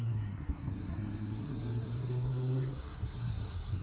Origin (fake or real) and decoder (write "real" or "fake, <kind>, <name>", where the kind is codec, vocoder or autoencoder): fake, codec, SNAC